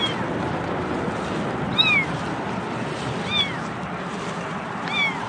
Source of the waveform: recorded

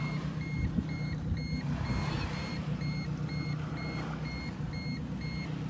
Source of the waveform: recorded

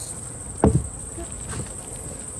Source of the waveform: recorded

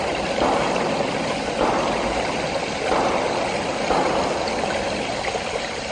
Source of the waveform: recorded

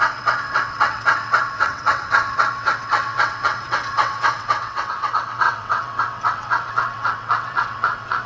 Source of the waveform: remade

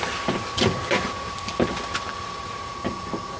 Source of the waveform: recorded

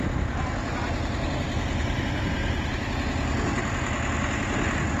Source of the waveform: recorded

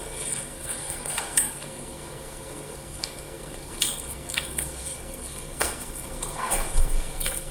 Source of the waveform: remade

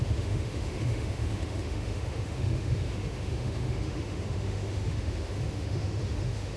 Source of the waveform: remade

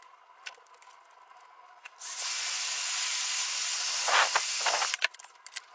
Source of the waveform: recorded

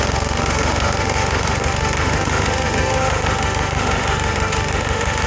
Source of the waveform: remade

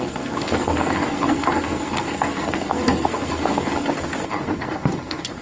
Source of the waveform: remade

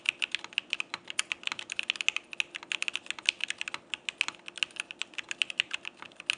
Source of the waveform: recorded